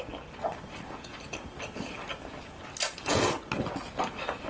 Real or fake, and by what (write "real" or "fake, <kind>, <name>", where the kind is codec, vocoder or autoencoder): real